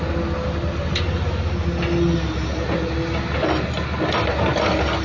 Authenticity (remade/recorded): recorded